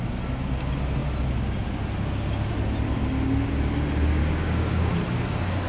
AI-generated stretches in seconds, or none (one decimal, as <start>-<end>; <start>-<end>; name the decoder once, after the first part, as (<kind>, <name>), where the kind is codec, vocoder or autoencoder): 4.2-4.9 (codec, DAC)